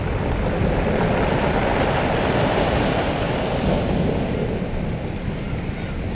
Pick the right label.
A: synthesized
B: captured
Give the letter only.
B